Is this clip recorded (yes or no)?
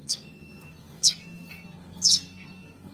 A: no